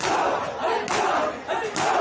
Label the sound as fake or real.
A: real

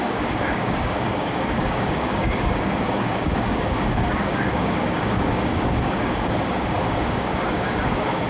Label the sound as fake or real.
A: fake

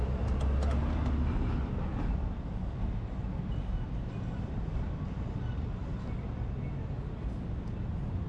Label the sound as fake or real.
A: real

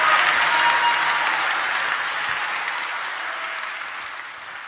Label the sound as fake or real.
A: real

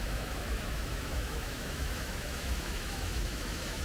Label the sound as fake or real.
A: fake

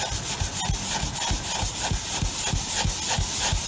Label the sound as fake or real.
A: real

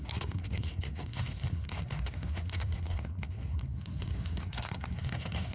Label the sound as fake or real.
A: fake